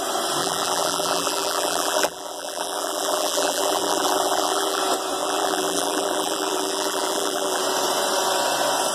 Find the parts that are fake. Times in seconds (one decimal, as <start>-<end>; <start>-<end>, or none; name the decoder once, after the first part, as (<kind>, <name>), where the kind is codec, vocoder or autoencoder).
0.4-4.8 (vocoder, BigVGAN v2); 5.2-7.6